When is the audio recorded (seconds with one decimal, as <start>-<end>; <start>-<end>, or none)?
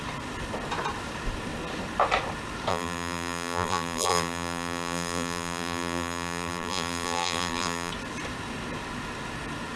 0.0-2.7; 7.9-9.8